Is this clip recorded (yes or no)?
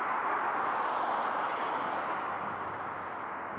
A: yes